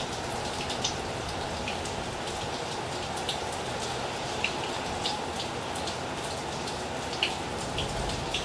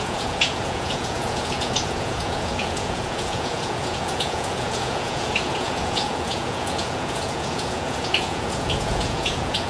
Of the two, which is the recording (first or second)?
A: first